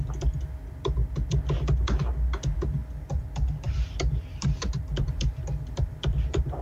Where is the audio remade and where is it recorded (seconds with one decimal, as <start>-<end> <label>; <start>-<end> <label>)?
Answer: 0.0-2.8 recorded; 2.8-6.6 remade